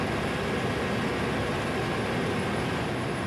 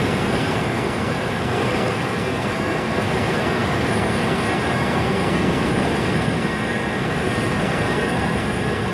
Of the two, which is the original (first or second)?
first